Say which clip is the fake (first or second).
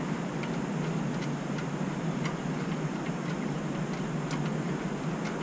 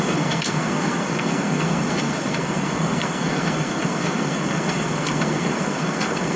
second